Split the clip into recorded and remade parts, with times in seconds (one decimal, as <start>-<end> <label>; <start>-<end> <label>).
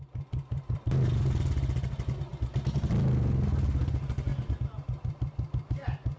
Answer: 0.0-6.2 recorded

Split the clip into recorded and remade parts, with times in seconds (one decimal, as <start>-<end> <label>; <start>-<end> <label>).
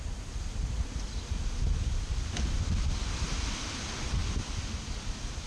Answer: 0.0-5.5 recorded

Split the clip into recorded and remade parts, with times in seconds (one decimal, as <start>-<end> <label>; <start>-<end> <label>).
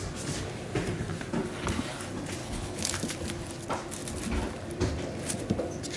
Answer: 0.0-2.4 recorded; 2.4-2.9 remade; 2.9-6.0 recorded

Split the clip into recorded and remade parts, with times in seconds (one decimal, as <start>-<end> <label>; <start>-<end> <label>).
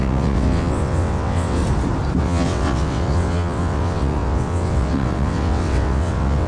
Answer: 0.0-1.6 remade; 1.6-2.2 recorded; 2.2-6.5 remade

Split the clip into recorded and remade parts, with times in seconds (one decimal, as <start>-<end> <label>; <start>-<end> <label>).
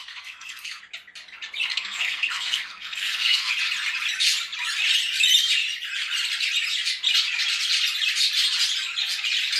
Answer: 0.0-0.8 remade; 0.8-1.7 recorded; 1.7-3.5 remade; 3.5-9.6 recorded